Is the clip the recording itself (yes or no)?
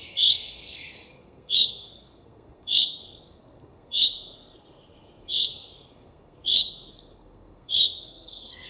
no